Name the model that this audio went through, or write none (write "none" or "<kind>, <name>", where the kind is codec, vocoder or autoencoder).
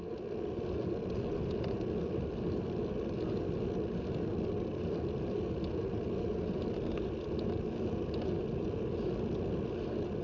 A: none